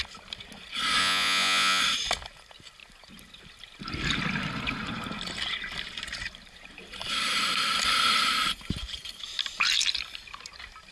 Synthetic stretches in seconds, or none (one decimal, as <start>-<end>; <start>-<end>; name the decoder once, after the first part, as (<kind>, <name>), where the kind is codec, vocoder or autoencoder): 1.0-1.8 (vocoder, Vocos)